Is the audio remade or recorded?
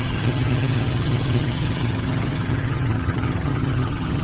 remade